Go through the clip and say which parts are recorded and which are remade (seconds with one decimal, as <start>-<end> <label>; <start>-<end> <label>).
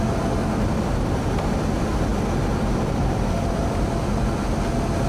0.0-0.4 recorded; 0.4-1.2 remade; 1.2-2.1 recorded; 2.1-3.6 remade; 3.6-5.1 recorded